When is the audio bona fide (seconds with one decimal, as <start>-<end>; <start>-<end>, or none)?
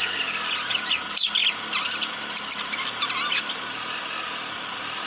0.0-5.1